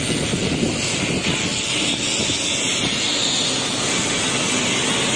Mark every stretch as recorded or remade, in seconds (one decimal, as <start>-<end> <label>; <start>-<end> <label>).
0.0-5.2 recorded

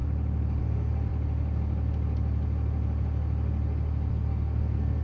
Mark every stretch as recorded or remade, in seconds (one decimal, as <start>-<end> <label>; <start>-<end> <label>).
0.0-0.6 recorded; 0.6-1.1 remade; 1.1-4.1 recorded; 4.1-5.0 remade

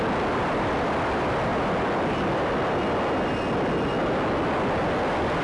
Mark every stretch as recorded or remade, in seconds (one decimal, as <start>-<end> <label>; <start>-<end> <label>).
0.0-5.4 recorded

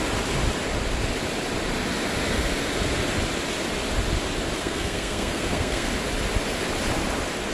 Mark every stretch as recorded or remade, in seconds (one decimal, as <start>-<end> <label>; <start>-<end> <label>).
0.0-4.6 recorded; 4.6-5.9 remade; 5.9-7.5 recorded

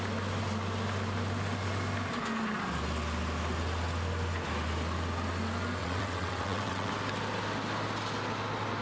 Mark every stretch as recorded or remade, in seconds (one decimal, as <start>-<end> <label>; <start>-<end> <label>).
0.0-5.8 recorded; 5.8-6.9 remade; 6.9-8.8 recorded